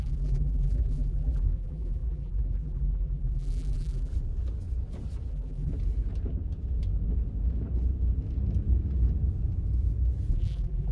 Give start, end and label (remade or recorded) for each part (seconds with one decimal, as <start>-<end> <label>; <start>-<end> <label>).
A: 0.0-4.1 remade; 4.1-5.3 recorded; 5.3-5.7 remade; 5.7-10.3 recorded; 10.3-10.9 remade